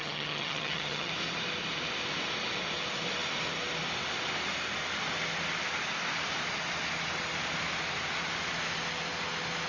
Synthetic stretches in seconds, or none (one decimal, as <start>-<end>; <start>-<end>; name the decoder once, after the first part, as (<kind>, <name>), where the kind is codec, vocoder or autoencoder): 0.0-1.1 (vocoder, HiFi-GAN)